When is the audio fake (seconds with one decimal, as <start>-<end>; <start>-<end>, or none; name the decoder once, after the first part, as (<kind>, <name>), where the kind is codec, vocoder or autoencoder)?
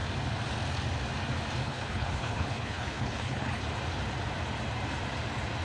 1.6-3.6 (codec, HILCodec)